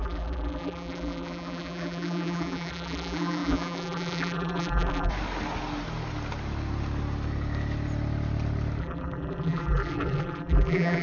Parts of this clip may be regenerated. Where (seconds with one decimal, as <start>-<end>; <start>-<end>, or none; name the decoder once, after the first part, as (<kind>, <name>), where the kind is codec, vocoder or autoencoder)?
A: 0.0-5.1 (vocoder, BigVGAN v2); 8.8-11.0